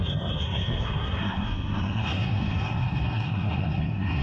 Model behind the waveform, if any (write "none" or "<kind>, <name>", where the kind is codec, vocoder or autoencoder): codec, SNAC